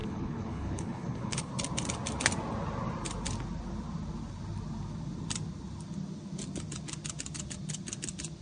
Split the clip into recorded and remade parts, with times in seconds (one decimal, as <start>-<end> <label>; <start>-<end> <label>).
0.0-1.5 remade; 1.5-8.4 recorded